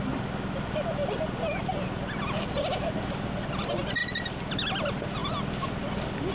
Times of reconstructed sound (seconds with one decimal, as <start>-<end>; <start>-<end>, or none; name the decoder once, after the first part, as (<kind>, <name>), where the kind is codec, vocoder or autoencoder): none